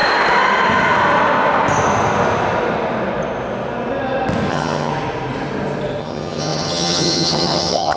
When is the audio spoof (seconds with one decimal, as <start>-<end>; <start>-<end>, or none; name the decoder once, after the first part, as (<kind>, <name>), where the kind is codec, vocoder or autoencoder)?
4.5-4.9 (vocoder, HiFi-GAN); 6.0-8.0